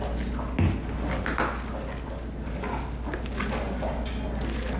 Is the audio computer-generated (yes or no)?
no